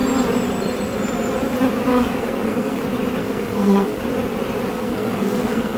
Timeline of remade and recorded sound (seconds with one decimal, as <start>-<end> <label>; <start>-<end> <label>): 0.0-1.9 recorded; 1.9-2.8 remade; 2.8-3.2 recorded; 3.2-4.0 remade; 4.0-4.7 recorded; 4.7-5.8 remade